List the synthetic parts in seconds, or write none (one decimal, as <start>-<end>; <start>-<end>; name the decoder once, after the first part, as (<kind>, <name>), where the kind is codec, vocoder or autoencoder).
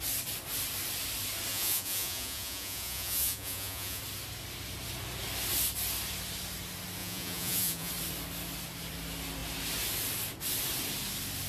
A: 1.5-4.0 (vocoder, Vocos); 7.0-7.9